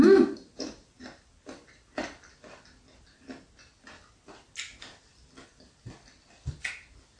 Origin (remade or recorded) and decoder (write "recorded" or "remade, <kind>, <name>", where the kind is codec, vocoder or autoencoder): recorded